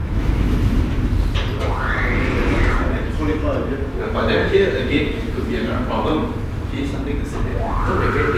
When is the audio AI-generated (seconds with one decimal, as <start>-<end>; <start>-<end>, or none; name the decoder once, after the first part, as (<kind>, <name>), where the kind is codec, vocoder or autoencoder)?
0.0-0.5 (autoencoder, DAC-VAE); 4.4-5.3